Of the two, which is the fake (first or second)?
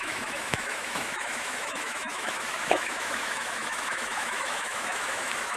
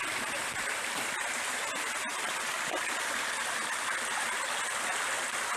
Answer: first